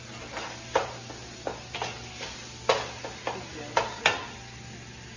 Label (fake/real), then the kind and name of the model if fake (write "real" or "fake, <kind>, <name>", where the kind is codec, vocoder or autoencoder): real